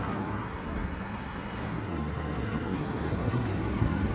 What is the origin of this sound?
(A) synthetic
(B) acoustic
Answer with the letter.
A